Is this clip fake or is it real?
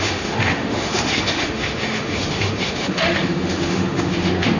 fake